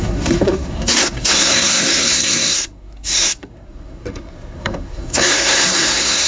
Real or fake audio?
fake